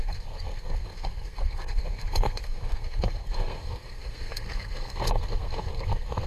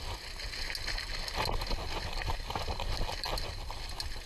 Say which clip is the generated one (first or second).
first